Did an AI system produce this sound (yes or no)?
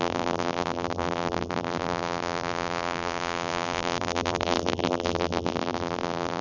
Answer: yes